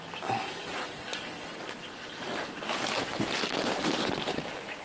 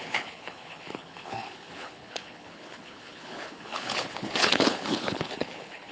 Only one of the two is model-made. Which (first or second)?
second